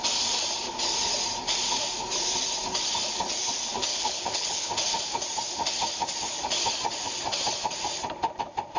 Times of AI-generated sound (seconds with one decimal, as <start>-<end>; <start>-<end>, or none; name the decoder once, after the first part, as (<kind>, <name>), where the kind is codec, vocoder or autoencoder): 3.9-4.7 (codec, HILCodec)